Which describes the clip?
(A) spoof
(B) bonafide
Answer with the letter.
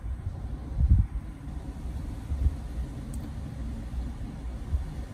B